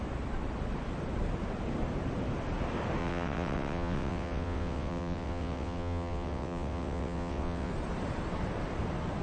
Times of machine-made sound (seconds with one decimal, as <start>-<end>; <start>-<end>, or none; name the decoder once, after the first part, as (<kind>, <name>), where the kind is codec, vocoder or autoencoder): 3.0-7.7 (vocoder, WaveNeXt)